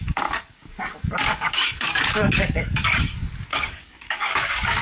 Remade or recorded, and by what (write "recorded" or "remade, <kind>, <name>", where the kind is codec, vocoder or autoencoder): remade, codec, DAC